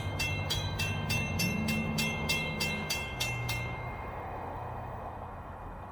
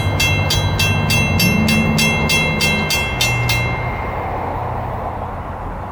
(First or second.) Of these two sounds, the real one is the second